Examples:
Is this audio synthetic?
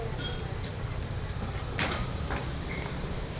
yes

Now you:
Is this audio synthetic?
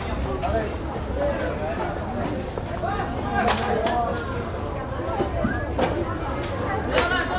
no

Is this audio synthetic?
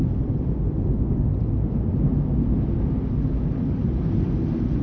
no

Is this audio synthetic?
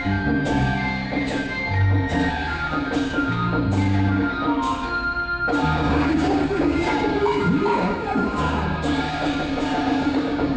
yes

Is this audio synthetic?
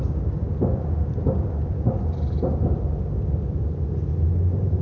no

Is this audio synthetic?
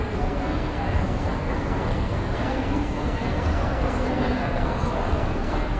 yes